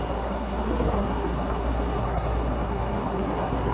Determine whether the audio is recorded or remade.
remade